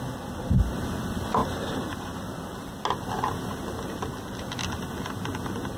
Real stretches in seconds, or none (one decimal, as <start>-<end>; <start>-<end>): 0.0-5.8